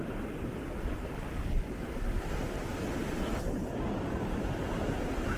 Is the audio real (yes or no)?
yes